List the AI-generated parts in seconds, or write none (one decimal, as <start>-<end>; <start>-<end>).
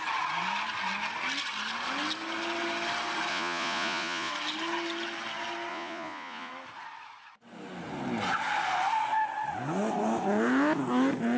3.3-4.3; 5.7-6.5